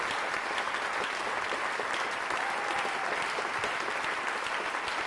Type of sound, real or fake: real